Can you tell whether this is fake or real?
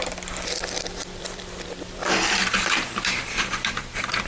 fake